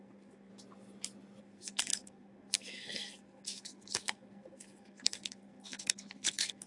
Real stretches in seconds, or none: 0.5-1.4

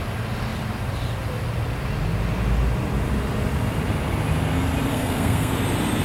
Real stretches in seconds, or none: 0.0-4.9; 5.5-6.0

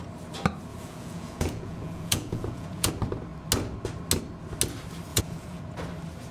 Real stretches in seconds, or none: 0.0-0.7; 2.9-5.1; 5.6-6.3

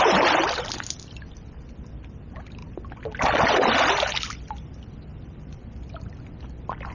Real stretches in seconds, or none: 0.0-6.9